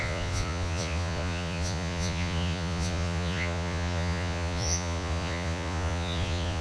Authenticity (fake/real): fake